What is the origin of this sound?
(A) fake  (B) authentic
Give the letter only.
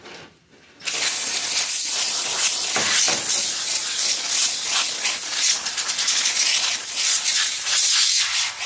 B